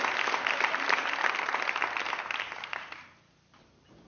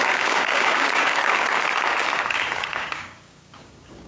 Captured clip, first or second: first